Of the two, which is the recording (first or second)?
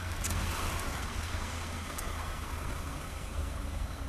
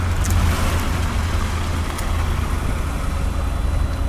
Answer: second